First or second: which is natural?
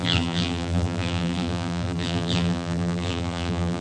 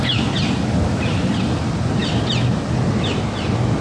second